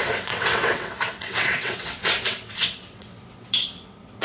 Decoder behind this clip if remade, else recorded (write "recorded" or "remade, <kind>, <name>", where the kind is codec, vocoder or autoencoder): remade, vocoder, WaveNeXt